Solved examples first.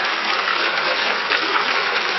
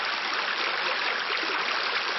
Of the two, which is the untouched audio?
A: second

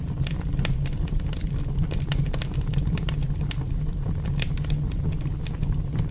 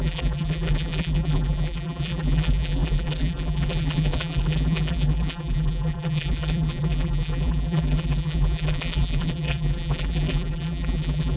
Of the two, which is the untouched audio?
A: first